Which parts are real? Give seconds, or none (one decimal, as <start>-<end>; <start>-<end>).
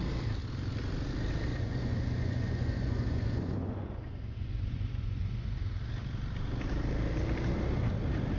0.0-1.5; 5.7-8.4